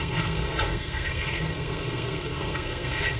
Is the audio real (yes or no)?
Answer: no